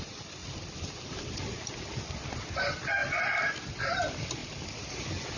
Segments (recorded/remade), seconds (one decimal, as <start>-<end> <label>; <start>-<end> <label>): 0.0-5.4 recorded